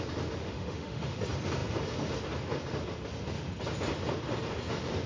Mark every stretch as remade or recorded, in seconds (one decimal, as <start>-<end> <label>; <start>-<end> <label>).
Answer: 0.0-0.4 recorded; 0.4-1.2 remade; 1.2-5.1 recorded